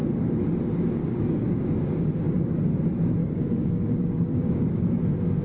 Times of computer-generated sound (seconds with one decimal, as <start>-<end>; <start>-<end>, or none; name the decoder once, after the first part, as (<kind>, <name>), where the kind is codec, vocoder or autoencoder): 1.0-2.6 (codec, DAC); 3.2-5.0